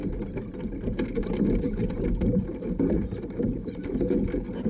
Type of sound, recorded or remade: recorded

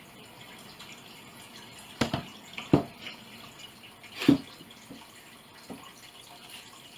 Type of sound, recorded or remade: recorded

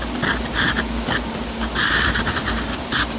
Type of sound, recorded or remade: recorded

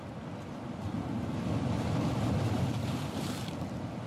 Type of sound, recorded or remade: recorded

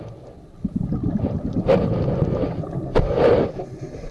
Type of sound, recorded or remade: recorded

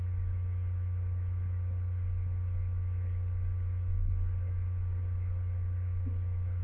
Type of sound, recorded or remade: recorded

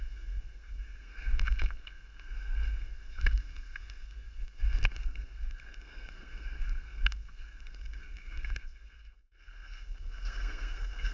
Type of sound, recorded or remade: remade